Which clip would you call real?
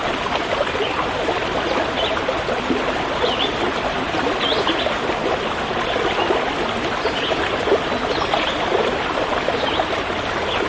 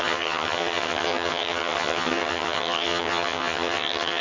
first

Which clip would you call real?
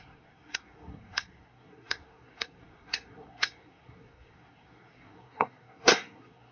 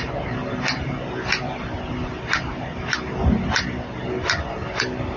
second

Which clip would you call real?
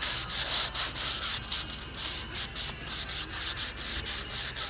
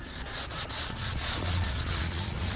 first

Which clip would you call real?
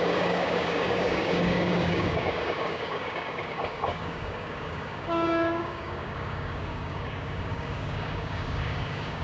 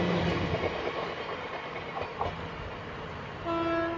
second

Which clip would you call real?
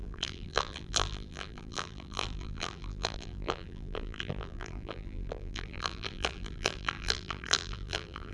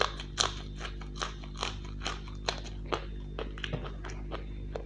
second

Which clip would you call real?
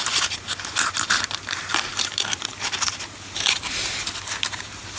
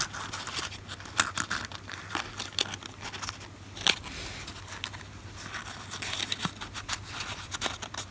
second